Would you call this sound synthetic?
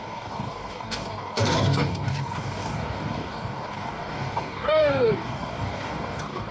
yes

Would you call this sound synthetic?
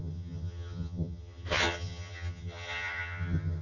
yes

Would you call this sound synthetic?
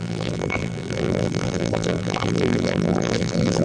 yes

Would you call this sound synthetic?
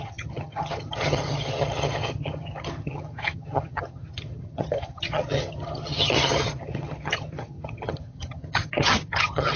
yes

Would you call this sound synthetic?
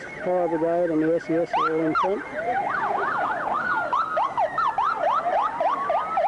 no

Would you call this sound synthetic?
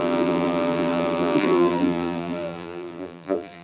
yes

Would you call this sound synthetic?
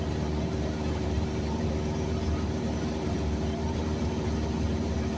yes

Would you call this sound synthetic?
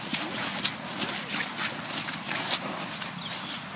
no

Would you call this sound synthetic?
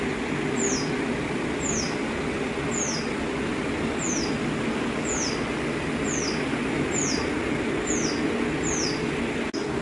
no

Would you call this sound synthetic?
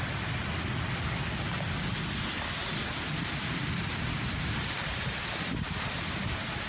no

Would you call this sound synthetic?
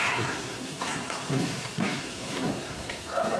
yes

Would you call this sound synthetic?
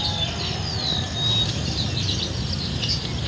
no